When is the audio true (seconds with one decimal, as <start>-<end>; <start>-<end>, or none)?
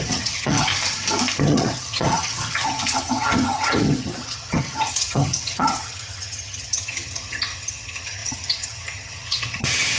0.7-1.4